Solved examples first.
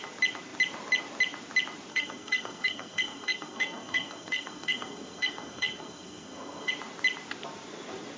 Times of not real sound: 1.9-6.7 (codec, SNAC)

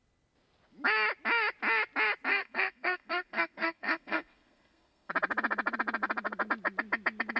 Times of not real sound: 2.3-5.1 (codec, SNAC)